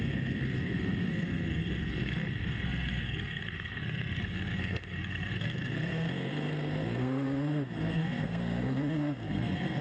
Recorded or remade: remade